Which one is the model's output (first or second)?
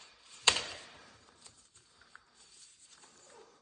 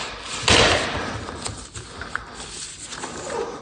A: first